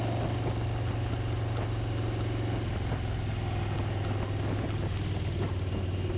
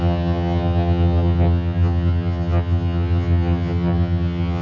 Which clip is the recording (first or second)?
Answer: first